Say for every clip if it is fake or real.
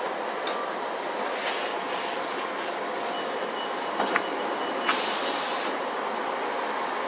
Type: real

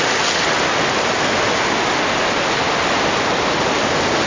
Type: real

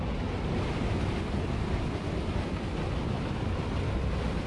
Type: real